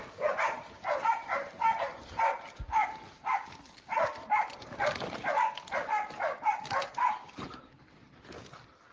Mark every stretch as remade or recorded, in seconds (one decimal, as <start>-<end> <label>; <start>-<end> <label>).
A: 0.0-7.0 recorded; 7.0-8.3 remade; 8.3-8.9 recorded